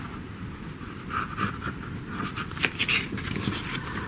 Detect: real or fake real